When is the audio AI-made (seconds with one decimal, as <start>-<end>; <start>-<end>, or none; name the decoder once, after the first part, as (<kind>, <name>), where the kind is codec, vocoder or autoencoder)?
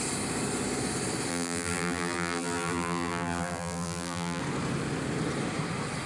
1.3-4.4 (vocoder, BigVGAN v2)